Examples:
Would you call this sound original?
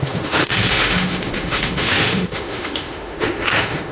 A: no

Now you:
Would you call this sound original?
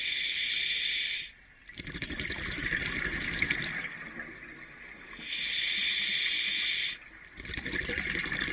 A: yes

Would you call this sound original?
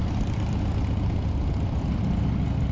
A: yes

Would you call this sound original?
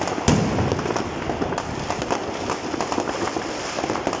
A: yes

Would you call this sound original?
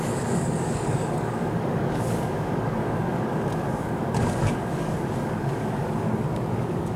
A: no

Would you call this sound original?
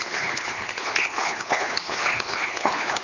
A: no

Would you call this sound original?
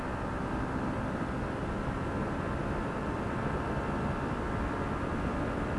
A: yes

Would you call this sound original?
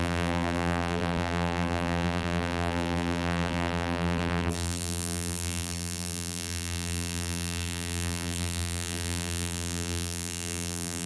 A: no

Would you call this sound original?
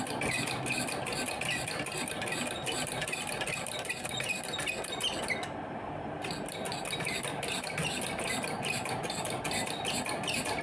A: yes